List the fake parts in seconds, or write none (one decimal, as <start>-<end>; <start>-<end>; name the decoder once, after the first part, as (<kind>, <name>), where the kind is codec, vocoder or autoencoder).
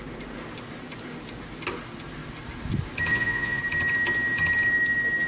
3.1-3.6 (vocoder, Vocos)